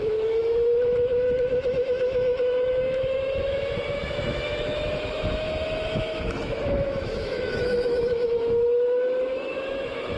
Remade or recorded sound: remade